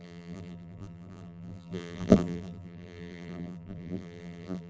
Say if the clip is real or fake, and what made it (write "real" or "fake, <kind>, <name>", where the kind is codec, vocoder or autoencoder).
fake, vocoder, BigVGAN v2